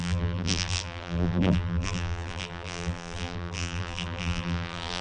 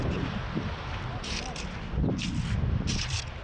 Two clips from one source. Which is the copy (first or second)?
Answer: first